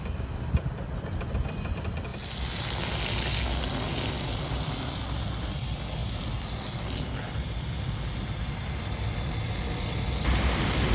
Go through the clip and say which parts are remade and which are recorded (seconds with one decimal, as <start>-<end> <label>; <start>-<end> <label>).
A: 0.0-10.9 recorded